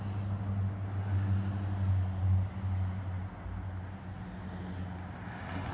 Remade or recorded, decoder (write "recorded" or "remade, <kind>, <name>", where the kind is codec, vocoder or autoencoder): recorded